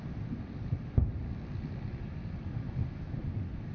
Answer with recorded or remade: recorded